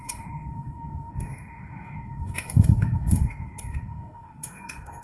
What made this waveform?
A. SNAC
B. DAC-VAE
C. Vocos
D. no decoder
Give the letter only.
B